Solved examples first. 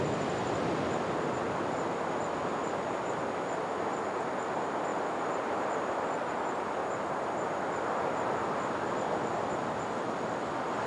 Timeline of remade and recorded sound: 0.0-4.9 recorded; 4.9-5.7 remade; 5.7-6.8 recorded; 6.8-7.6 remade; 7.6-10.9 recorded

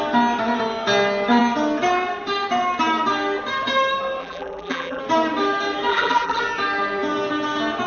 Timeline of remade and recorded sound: 0.0-4.2 recorded; 4.2-5.0 remade; 5.0-5.9 recorded; 5.9-6.4 remade; 6.4-7.9 recorded